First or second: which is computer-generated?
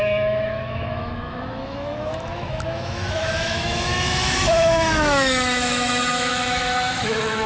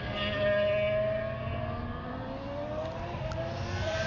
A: first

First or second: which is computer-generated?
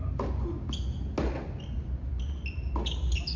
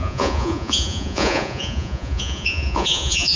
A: second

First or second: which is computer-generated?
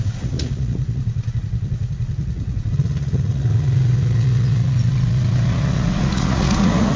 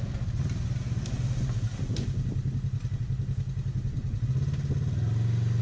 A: first